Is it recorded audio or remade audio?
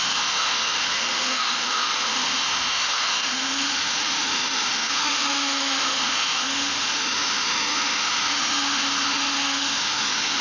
remade